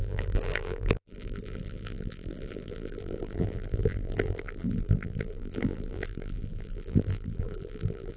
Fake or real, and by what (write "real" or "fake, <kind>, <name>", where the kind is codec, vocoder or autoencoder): fake, vocoder, BigVGAN v2